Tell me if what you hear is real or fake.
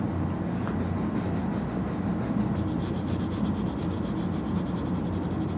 real